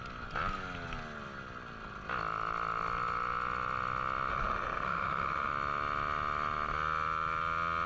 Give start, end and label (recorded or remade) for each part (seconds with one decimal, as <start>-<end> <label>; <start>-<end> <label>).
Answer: 0.0-4.3 recorded; 4.3-5.5 remade; 5.5-7.9 recorded